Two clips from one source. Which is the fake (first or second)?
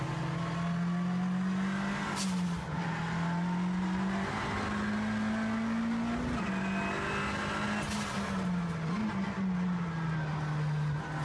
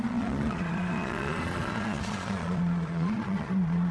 second